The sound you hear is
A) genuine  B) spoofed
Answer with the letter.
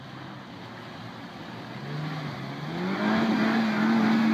A